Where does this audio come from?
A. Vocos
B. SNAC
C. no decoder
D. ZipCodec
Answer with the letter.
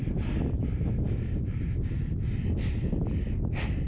C